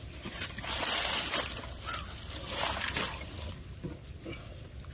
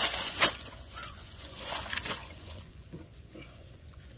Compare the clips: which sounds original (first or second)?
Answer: first